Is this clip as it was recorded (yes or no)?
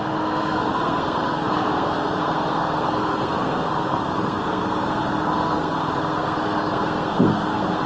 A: no